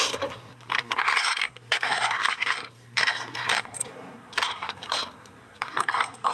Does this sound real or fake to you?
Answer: fake